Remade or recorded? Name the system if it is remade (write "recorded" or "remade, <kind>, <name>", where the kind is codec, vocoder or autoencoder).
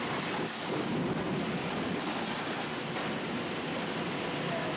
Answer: recorded